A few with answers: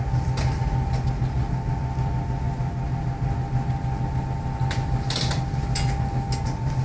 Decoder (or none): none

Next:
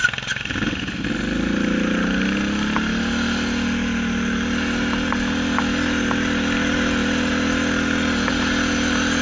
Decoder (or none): none